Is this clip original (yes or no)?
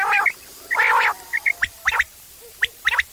no